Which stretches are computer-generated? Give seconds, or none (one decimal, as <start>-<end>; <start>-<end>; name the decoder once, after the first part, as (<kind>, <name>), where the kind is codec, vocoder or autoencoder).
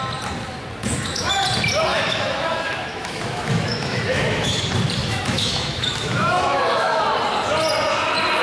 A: 0.8-1.4 (autoencoder, DAC-VAE); 1.9-4.6; 5.0-7.0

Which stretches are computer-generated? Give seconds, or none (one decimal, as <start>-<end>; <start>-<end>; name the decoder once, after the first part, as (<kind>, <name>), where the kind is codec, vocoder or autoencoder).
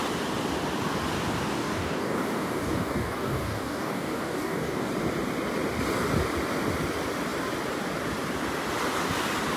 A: 1.6-4.9 (codec, DAC)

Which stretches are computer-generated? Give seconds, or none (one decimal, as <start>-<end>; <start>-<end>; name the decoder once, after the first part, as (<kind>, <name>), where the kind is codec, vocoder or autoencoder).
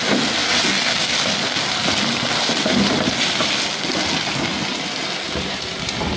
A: none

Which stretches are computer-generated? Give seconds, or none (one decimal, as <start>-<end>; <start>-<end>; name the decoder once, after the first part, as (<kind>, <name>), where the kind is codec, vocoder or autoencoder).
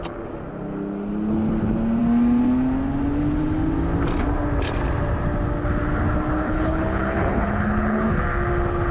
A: 6.3-8.2 (codec, HILCodec)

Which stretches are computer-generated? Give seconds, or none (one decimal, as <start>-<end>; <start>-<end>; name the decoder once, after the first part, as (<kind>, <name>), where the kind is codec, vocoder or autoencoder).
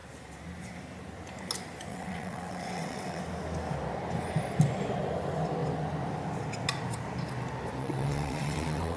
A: 1.9-3.2 (vocoder, WaveNeXt); 7.8-9.0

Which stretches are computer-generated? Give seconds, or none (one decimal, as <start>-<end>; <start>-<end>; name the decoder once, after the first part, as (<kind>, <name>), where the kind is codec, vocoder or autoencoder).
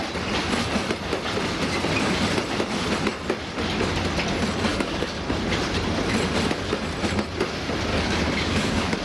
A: 4.7-5.2 (codec, DAC); 7.9-9.0